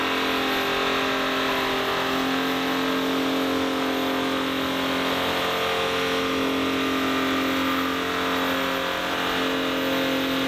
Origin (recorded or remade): recorded